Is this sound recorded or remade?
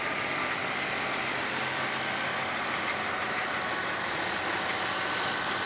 recorded